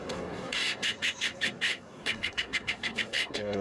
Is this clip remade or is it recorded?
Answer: remade